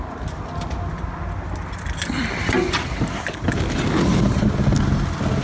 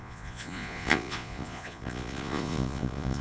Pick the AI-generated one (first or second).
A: second